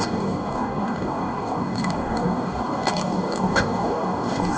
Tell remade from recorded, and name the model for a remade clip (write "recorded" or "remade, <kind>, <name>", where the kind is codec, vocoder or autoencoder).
remade, codec, DAC